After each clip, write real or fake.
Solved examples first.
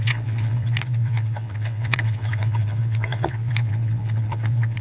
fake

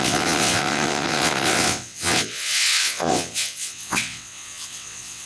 fake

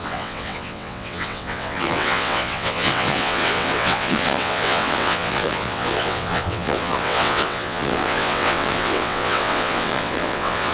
fake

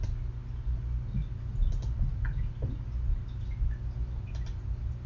real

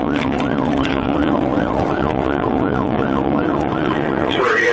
fake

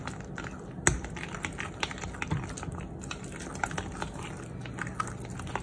real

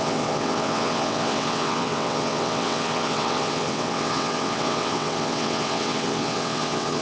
fake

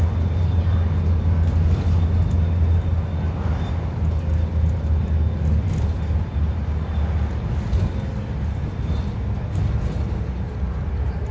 real